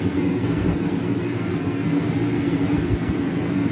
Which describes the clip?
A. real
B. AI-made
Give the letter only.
B